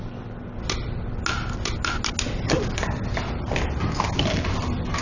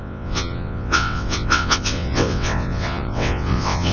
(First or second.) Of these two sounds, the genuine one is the first